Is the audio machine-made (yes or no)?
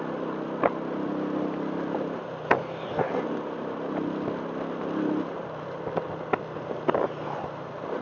no